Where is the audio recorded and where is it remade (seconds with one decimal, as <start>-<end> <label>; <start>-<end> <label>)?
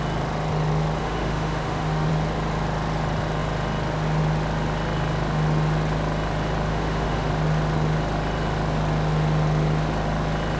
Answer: 0.0-1.0 recorded; 1.0-2.1 remade; 2.1-6.7 recorded; 6.7-7.3 remade; 7.3-10.6 recorded